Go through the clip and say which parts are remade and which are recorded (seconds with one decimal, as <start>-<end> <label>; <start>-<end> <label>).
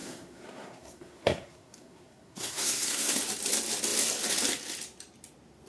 0.0-3.2 remade; 3.2-5.7 recorded